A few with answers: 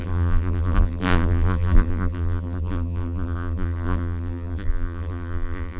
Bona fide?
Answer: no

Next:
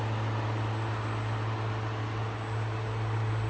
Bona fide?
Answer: yes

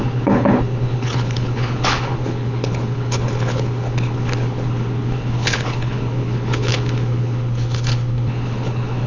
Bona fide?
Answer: no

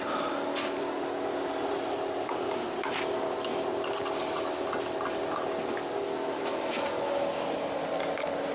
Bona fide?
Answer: yes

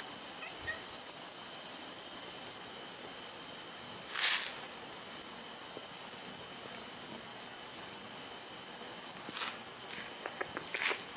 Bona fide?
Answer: yes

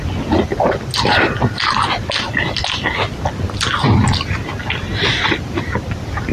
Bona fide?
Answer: yes